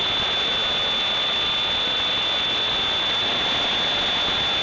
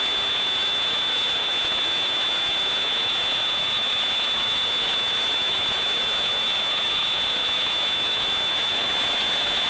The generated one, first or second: second